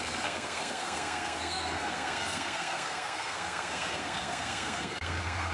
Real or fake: fake